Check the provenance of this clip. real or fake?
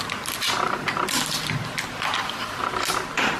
real